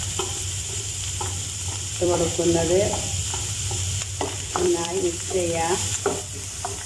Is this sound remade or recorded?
remade